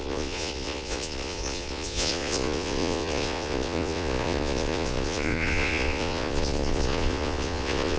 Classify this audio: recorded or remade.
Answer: remade